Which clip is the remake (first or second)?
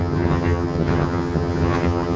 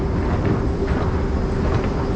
first